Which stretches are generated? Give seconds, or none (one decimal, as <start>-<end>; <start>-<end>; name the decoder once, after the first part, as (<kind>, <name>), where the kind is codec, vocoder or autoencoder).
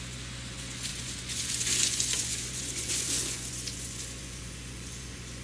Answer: 0.0-5.4 (vocoder, Vocos)